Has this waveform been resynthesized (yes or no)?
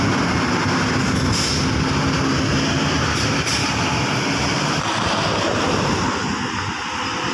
no